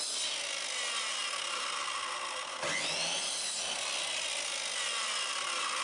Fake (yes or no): no